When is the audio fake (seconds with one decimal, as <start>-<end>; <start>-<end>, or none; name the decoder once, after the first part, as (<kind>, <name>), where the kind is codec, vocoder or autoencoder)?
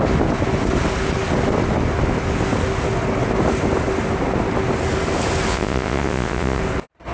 5.5-6.6 (vocoder, Vocos)